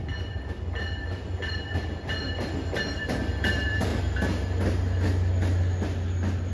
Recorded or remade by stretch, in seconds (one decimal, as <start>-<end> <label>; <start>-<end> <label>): 0.0-3.9 remade; 3.9-6.5 recorded